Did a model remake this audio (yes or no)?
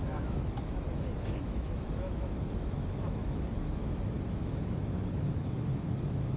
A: yes